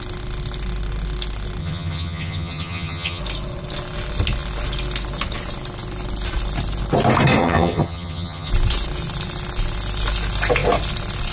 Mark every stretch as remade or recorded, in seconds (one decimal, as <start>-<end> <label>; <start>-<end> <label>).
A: 0.0-1.6 recorded; 1.6-3.2 remade; 3.2-7.4 recorded; 7.4-8.5 remade; 8.5-11.3 recorded